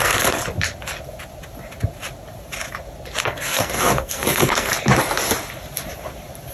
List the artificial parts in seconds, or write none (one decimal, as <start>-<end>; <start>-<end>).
0.0-0.4; 3.2-4.7